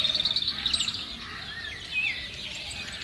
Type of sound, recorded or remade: recorded